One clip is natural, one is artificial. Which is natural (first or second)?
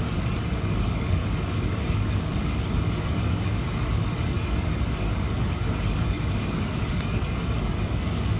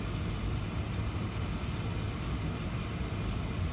second